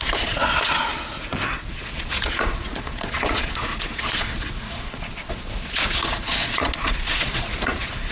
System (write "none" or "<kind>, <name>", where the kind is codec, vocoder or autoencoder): vocoder, Vocos